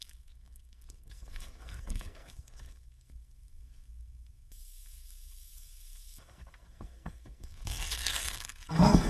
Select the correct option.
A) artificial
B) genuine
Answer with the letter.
A